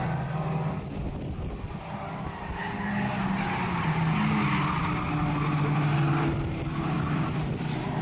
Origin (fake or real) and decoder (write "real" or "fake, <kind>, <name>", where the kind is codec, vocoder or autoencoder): real